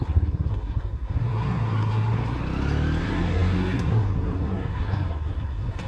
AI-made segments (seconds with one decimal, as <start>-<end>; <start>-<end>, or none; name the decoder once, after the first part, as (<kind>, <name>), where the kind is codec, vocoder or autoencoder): 0.0-2.4 (codec, SNAC); 3.0-5.9